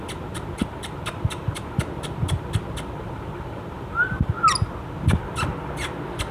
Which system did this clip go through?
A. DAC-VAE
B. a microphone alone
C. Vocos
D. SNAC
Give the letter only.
B